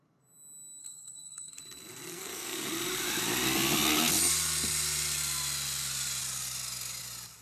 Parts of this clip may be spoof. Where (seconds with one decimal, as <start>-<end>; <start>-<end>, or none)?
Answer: 0.8-1.6; 2.1-2.7

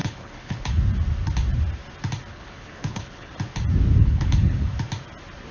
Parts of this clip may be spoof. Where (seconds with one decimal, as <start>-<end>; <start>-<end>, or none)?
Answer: 0.0-0.8; 2.3-3.3; 4.0-4.7

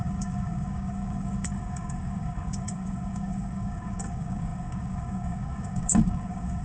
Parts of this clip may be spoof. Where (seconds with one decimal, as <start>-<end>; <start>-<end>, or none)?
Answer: 0.0-6.6

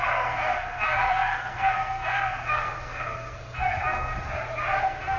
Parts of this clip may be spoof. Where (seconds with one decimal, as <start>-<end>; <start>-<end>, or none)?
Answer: 0.0-4.1; 4.8-5.2

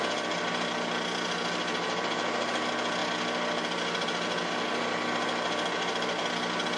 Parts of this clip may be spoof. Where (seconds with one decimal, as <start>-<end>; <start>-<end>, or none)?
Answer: none

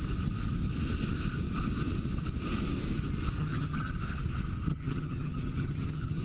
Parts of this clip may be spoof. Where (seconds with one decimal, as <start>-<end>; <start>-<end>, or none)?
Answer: 3.4-3.9; 4.7-6.2

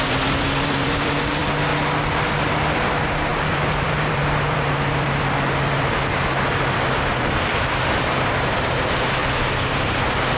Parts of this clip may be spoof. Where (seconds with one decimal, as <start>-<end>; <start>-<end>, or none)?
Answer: 0.0-1.7; 2.4-9.2; 9.7-10.4